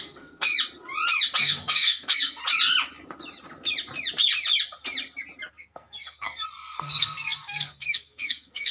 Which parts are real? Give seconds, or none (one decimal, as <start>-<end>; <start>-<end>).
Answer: 0.5-1.4; 2.4-5.5